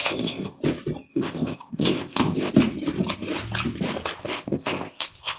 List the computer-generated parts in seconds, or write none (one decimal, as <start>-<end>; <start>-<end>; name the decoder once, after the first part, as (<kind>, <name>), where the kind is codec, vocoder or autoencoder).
0.0-0.6 (codec, ZipCodec); 1.1-2.5; 4.2-5.4